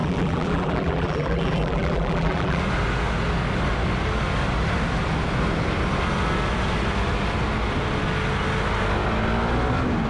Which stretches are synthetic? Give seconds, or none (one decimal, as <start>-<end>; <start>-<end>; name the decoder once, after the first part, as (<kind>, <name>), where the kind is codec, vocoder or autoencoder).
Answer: 0.0-2.6 (vocoder, BigVGAN v2)